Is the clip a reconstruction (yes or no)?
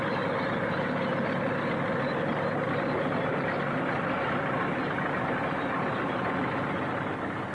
no